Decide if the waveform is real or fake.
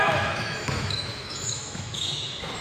fake